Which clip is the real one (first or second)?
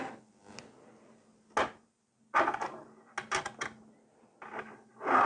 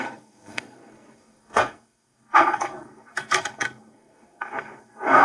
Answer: first